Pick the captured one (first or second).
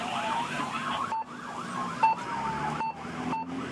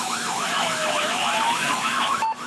first